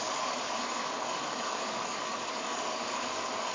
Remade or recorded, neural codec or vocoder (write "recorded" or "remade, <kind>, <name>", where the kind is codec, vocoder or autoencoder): remade, codec, DAC